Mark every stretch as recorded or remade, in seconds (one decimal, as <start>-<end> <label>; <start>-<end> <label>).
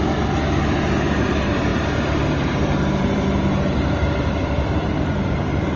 0.0-1.7 recorded; 1.7-5.2 remade; 5.2-5.8 recorded